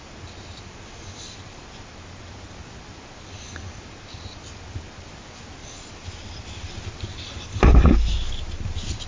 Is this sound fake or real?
real